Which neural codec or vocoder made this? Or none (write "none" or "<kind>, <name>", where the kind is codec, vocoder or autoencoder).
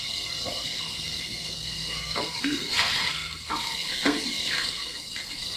codec, SNAC